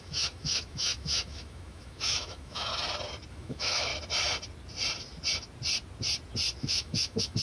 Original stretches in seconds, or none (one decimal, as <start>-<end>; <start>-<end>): 2.7-3.3; 3.9-6.6